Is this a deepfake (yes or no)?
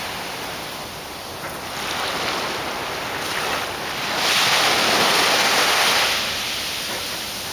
no